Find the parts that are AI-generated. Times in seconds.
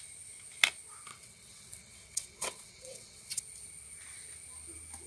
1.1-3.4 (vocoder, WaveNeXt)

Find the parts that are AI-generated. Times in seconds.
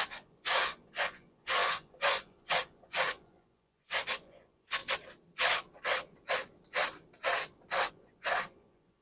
0.0-4.8 (vocoder, Vocos); 7.9-9.0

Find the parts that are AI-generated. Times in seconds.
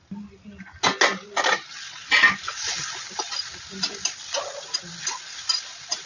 none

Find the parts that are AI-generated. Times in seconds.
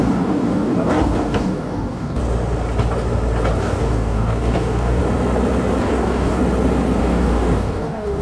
0.0-2.2 (codec, DAC); 3.6-5.0; 5.8-6.4; 7.0-8.2